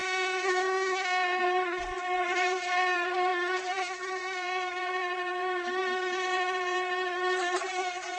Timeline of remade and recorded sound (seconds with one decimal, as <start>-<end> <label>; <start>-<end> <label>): 0.0-1.4 recorded; 1.4-3.3 remade; 3.3-4.1 recorded; 4.1-8.2 remade